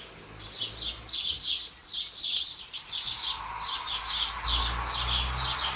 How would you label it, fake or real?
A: real